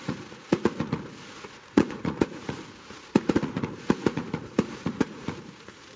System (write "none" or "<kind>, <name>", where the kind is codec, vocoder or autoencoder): vocoder, Vocos